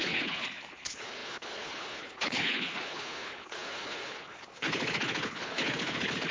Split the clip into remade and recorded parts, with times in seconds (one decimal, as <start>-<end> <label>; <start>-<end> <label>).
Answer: 0.0-6.3 remade